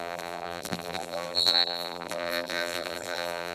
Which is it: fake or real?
fake